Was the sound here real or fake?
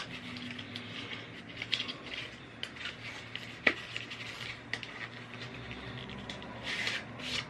real